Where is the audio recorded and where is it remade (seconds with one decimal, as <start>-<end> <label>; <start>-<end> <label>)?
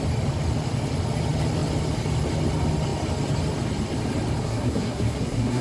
0.0-4.4 recorded; 4.4-5.6 remade